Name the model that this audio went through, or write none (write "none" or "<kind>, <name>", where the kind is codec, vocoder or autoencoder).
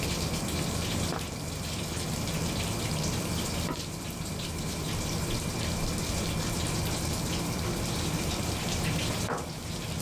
none